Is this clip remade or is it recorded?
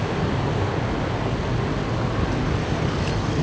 recorded